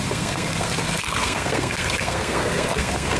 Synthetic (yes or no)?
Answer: yes